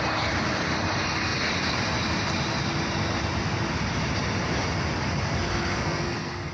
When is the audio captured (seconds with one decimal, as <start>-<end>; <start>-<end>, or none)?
0.0-5.5